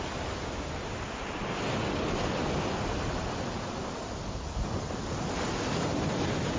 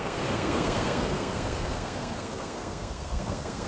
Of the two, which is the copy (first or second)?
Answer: second